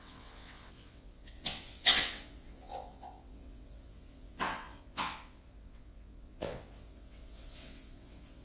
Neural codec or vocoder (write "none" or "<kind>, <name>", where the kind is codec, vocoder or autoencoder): vocoder, WaveNeXt